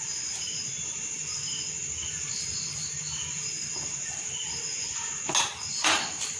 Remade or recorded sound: recorded